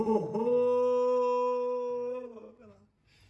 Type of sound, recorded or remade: recorded